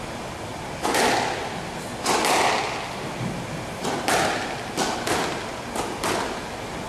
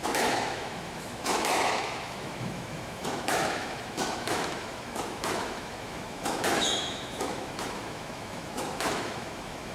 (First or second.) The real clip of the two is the first